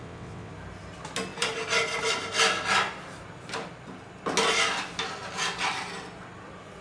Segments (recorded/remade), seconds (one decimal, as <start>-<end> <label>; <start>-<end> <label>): 0.0-0.5 remade; 0.5-6.8 recorded